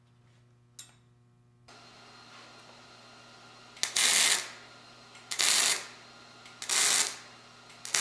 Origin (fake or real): real